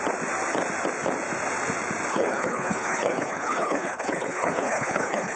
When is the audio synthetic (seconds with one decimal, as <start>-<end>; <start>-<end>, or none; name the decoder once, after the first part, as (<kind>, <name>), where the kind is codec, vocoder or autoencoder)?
2.1-5.4 (codec, HILCodec)